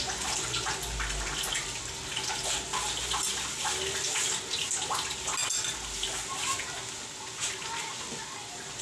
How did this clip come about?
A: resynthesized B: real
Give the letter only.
B